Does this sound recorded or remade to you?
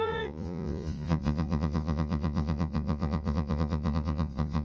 remade